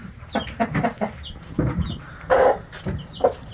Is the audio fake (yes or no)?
yes